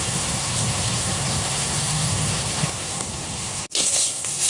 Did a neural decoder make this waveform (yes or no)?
yes